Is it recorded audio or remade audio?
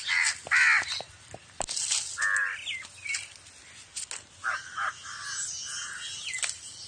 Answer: recorded